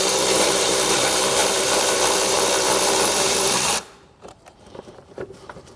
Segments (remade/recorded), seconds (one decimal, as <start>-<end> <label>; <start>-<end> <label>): 0.0-5.8 remade